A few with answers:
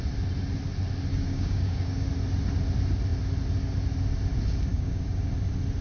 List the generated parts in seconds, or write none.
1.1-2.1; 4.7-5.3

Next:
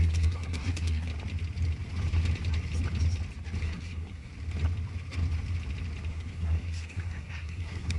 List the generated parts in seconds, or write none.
0.0-1.1; 3.6-4.3; 6.1-8.0

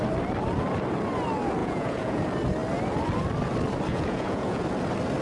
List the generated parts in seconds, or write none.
1.6-2.2; 3.9-4.6

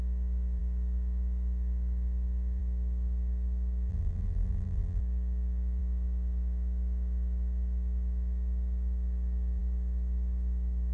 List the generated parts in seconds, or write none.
3.9-5.0

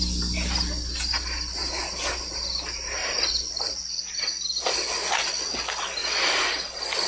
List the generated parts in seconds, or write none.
3.0-5.1; 6.0-6.5

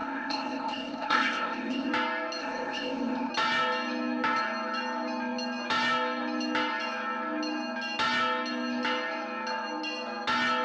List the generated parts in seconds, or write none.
0.0-1.9; 2.4-3.3

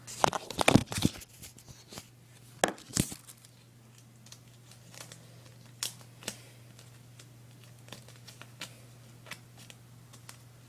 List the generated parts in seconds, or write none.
none

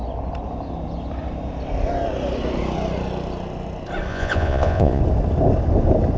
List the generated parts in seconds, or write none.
4.1-5.0